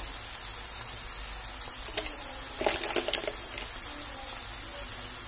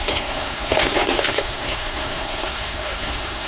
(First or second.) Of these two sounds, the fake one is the second